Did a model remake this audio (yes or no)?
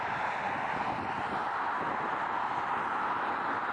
no